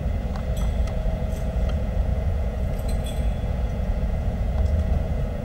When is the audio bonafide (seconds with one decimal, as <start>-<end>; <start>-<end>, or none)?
0.0-0.9

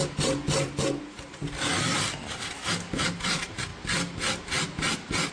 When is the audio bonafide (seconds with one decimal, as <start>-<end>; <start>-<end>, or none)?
0.0-5.3

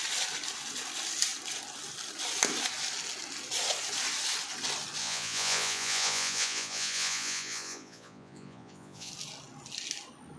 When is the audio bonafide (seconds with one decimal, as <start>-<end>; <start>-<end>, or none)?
0.0-5.0; 9.1-10.4

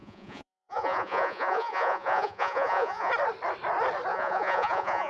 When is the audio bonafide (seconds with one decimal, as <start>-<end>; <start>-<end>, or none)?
3.1-4.1

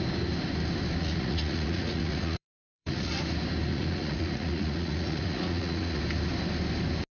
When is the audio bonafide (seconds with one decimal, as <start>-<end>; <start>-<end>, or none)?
0.0-1.0; 3.1-3.7; 6.0-7.2

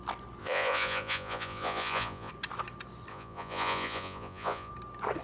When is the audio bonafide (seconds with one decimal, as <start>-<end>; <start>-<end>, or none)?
0.0-0.4; 2.3-3.1; 4.7-5.2

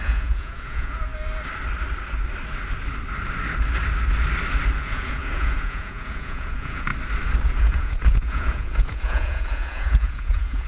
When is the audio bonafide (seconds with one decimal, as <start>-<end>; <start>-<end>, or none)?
1.1-4.8; 6.9-7.6